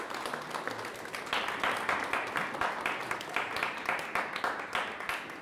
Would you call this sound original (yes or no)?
yes